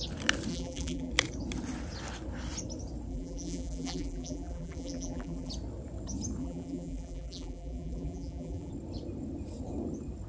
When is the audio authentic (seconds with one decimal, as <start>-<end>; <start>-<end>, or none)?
0.0-0.5; 1.1-3.1; 5.5-6.4; 8.7-10.3